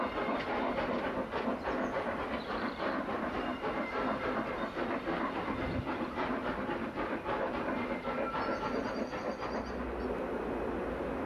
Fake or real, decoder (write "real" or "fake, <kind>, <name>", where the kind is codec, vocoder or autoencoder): real